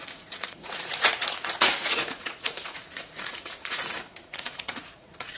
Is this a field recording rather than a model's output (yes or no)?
no